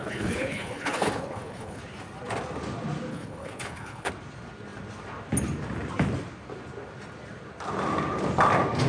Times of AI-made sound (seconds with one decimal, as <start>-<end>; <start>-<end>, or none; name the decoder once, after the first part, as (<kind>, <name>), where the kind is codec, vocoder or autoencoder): 0.0-1.8 (codec, HILCodec); 3.1-4.1